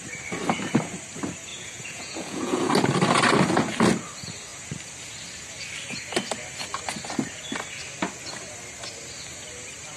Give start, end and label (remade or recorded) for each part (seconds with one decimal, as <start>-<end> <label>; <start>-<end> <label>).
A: 0.0-1.5 recorded; 1.5-2.7 remade; 2.7-10.0 recorded